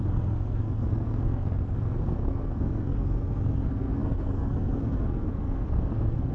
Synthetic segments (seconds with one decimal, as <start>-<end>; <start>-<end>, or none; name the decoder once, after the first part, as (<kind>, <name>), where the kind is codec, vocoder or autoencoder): 0.0-6.3 (codec, SNAC)